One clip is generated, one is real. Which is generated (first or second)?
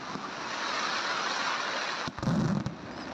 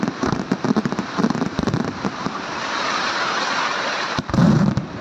second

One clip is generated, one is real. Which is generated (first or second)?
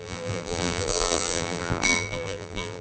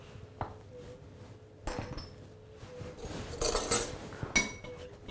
first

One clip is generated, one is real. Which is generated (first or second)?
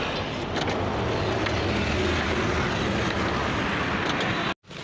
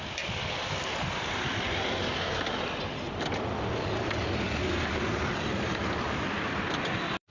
second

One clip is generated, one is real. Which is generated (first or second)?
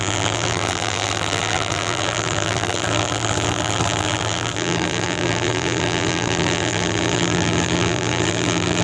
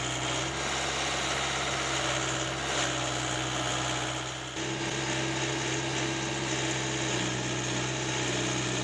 first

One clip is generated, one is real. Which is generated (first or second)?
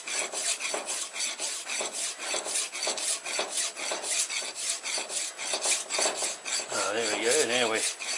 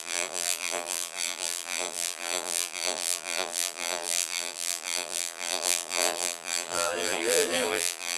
second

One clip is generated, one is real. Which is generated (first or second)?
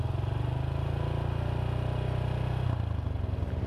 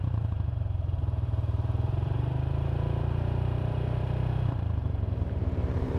second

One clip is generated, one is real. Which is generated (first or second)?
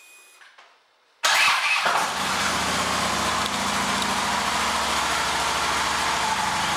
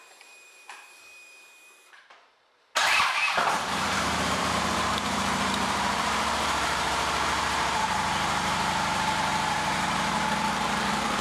second